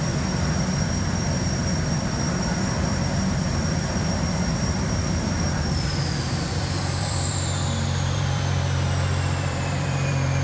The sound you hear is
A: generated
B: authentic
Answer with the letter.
A